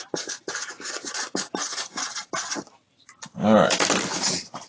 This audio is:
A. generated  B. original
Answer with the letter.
B